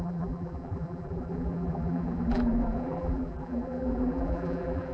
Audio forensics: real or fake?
fake